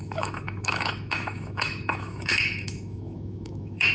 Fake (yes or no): yes